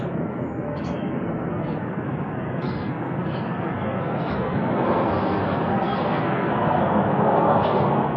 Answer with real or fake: fake